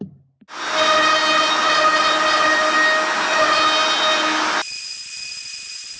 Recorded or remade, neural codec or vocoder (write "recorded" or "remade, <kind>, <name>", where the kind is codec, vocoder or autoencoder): recorded